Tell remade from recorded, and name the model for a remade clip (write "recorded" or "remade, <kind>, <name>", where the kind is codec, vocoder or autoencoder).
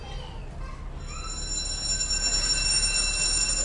recorded